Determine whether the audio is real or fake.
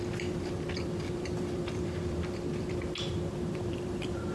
fake